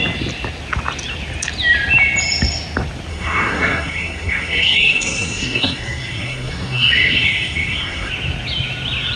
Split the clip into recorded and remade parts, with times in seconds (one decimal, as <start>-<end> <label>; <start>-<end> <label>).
0.0-3.1 recorded; 3.1-8.1 remade; 8.1-9.2 recorded